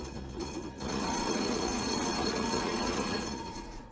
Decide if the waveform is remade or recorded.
remade